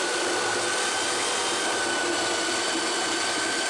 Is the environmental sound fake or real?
real